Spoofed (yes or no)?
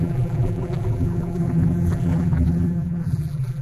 yes